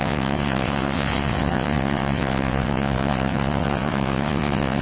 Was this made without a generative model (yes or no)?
no